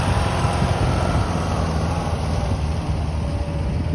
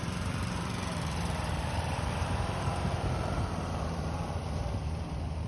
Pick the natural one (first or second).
first